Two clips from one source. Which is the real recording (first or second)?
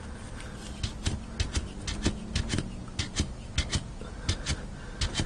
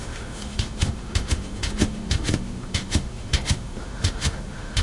first